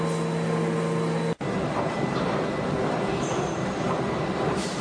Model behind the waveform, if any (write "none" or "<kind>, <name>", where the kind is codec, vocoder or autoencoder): none